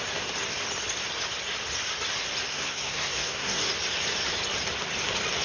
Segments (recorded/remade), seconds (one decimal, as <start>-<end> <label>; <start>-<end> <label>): 0.0-2.5 recorded; 2.5-3.7 remade; 3.7-5.4 recorded